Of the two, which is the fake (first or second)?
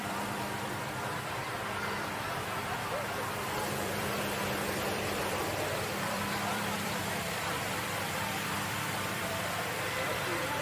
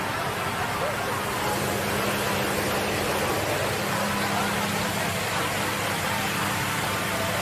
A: first